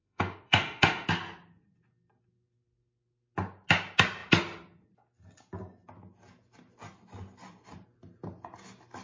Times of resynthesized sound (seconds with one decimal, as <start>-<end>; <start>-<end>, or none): 0.0-1.1